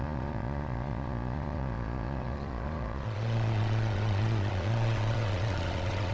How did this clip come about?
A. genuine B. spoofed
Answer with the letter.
B